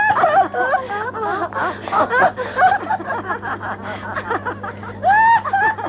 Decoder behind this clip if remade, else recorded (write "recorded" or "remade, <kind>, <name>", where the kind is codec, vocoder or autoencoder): recorded